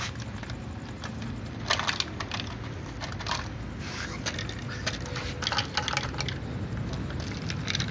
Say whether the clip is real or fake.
real